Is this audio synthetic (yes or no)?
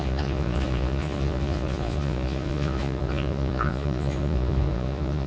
yes